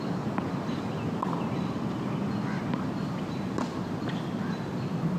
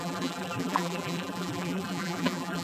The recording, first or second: first